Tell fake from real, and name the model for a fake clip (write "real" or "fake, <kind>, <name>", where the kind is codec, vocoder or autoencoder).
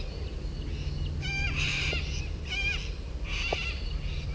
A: fake, vocoder, BigVGAN v2